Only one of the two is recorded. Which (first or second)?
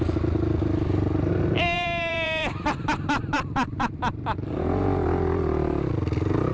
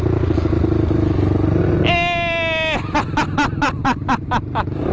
second